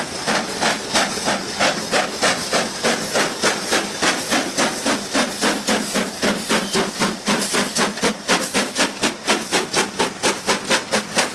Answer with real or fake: real